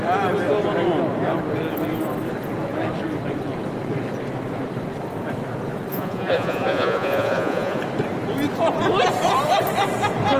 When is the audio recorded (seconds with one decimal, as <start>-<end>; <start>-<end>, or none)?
0.0-5.9; 7.8-10.4